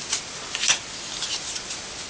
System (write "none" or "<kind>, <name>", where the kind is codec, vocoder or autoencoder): none